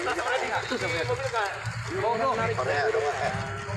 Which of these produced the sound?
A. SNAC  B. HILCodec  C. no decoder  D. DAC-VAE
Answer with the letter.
C